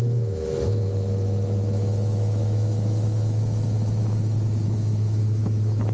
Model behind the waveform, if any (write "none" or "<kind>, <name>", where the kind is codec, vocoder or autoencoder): autoencoder, DAC-VAE